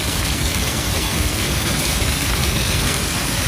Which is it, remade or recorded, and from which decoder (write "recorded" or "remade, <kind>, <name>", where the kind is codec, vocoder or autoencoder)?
remade, codec, SNAC